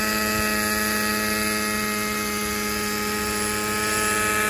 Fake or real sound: real